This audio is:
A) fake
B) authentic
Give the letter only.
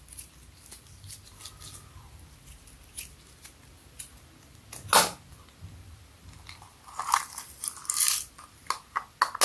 B